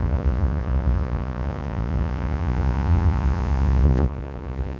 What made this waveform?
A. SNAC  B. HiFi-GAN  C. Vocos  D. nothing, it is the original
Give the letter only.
C